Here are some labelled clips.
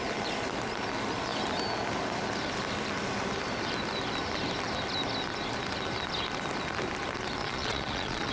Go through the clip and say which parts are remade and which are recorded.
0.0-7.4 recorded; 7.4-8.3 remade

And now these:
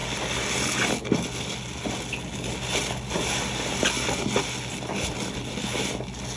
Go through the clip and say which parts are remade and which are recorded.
0.0-6.4 recorded

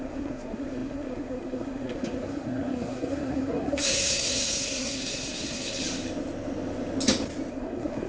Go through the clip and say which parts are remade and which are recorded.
0.0-5.8 remade; 5.8-7.5 recorded; 7.5-8.1 remade

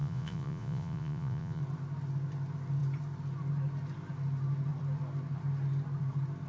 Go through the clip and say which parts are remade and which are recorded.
0.0-1.6 remade; 1.6-6.5 recorded

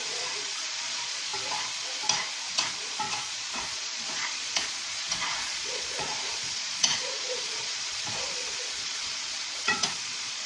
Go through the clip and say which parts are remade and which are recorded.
0.0-1.3 remade; 1.3-2.5 recorded; 2.5-10.5 remade

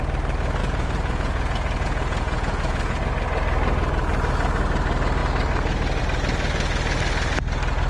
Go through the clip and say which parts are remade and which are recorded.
0.0-0.6 recorded; 0.6-3.0 remade; 3.0-7.9 recorded